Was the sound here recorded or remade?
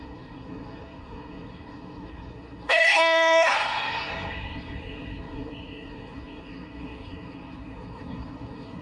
remade